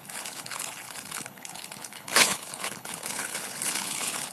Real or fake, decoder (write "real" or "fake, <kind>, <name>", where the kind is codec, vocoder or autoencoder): fake, codec, HILCodec